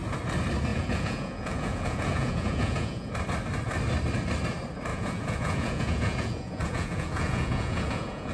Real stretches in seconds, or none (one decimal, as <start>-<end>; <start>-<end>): 0.0-0.7; 3.1-4.9